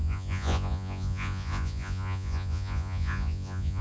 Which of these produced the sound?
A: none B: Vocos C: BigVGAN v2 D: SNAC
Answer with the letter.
B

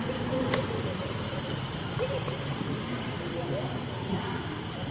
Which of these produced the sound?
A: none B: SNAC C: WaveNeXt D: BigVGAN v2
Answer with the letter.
A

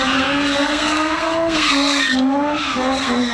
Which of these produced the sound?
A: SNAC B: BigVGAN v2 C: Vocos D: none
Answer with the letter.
A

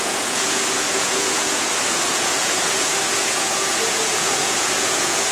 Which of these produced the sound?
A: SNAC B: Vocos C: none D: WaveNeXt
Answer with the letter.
B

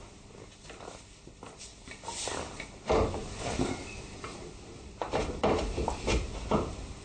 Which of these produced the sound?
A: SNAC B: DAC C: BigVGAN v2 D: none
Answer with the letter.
D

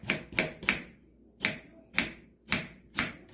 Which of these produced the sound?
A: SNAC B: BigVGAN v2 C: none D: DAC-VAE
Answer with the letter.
C